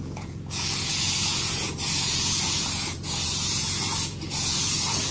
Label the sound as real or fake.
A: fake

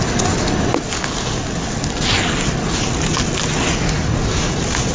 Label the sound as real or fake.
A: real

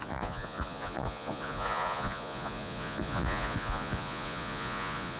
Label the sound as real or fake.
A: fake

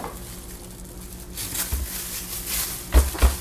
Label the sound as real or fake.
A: real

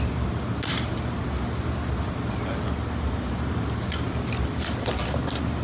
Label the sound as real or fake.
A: real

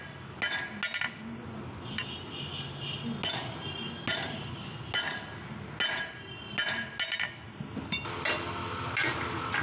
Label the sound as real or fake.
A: real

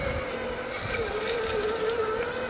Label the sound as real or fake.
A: real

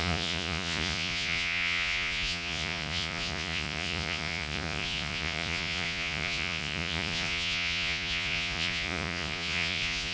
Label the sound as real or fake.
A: fake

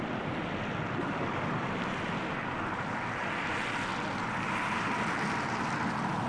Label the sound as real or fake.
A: real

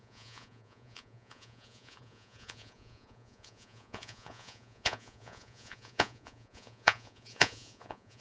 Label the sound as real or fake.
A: fake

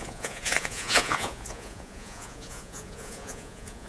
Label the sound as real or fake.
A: fake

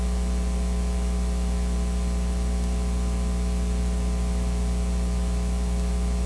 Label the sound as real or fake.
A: real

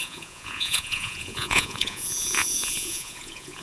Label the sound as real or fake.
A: fake